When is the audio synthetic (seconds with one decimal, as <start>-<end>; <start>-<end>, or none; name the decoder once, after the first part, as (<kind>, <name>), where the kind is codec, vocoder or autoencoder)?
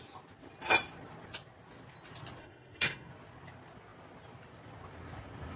2.4-3.1 (codec, SNAC)